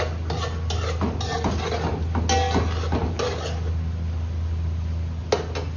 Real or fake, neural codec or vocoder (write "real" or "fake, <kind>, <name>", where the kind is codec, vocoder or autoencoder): real